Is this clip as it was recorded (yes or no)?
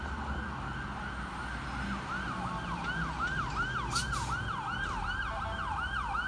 yes